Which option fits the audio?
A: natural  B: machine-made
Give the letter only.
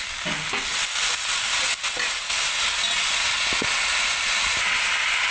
A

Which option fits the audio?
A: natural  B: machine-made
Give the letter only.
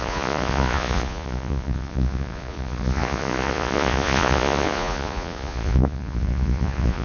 B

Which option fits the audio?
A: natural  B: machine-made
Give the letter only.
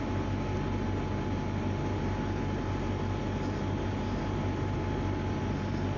A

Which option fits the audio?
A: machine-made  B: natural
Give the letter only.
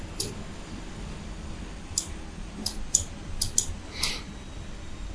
B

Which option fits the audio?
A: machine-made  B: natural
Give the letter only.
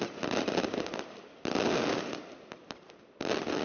B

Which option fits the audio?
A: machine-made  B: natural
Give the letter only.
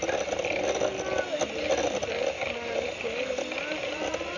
B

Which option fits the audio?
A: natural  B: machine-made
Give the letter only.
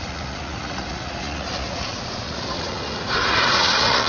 B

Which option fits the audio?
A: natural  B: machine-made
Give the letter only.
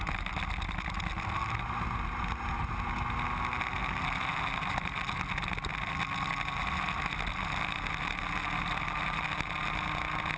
A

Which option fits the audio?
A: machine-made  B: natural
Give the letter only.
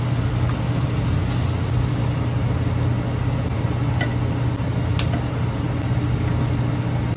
B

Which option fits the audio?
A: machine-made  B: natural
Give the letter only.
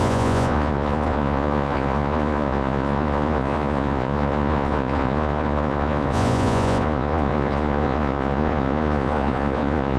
A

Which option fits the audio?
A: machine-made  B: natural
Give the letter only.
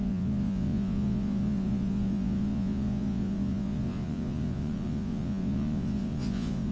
A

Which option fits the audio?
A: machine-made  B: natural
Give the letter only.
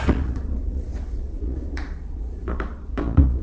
A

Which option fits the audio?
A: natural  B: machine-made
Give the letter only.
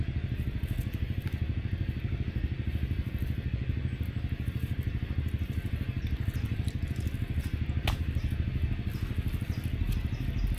A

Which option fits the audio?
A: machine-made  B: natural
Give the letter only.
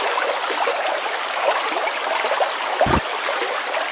B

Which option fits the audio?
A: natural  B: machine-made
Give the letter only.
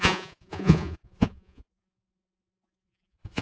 B